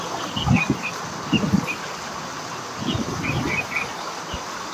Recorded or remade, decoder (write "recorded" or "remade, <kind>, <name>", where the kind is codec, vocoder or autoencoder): recorded